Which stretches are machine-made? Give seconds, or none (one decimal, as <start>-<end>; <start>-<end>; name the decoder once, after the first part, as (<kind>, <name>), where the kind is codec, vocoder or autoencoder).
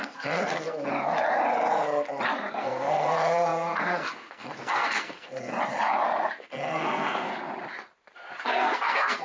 0.0-0.9 (codec, SNAC); 2.5-5.5; 6.4-7.3; 8.4-9.2